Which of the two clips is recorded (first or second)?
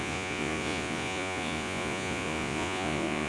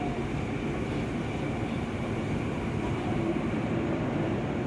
second